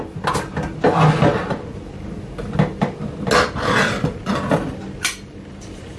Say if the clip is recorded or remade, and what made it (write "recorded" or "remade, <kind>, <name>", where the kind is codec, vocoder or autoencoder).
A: recorded